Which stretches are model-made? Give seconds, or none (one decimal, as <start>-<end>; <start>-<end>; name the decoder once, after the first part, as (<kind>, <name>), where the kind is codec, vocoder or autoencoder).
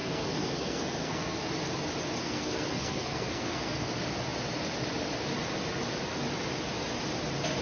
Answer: 0.0-1.5 (codec, SNAC); 2.2-3.9